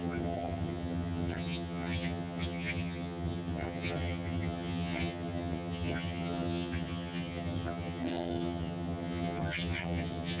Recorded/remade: remade